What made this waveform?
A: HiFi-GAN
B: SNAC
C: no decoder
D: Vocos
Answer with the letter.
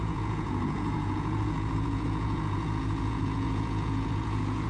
D